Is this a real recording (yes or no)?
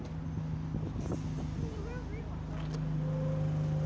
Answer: yes